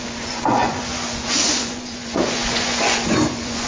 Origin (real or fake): fake